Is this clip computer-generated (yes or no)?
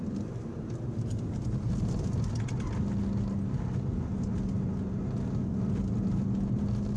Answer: no